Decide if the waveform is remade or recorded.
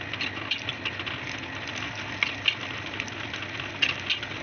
recorded